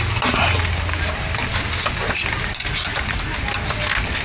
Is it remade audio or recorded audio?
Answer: recorded